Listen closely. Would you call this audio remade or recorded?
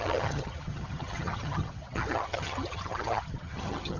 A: remade